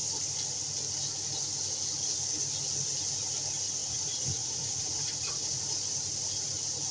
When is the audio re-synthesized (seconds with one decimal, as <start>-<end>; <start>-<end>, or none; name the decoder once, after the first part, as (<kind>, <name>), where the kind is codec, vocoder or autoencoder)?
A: 3.8-5.6 (vocoder, Vocos)